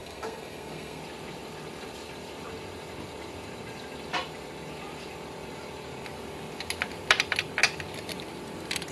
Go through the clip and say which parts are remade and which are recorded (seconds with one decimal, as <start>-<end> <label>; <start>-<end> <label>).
0.0-1.0 remade; 1.0-8.9 recorded